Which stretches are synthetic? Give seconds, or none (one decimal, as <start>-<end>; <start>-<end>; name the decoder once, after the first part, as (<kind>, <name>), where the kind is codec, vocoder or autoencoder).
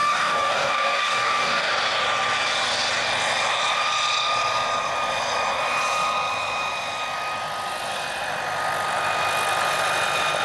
0.0-1.7 (codec, DAC)